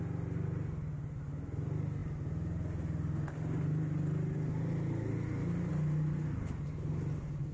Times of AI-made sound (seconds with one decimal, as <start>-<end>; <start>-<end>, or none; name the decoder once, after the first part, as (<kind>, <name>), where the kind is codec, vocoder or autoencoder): none